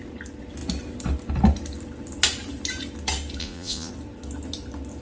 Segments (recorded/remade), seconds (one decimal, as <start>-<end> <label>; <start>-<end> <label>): 0.0-3.4 recorded; 3.4-3.9 remade; 3.9-5.0 recorded